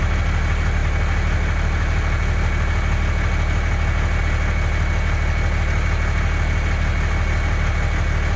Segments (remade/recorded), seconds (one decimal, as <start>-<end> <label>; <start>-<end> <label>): 0.0-8.4 recorded